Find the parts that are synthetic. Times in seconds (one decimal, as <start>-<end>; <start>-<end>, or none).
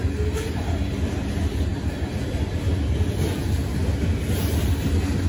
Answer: none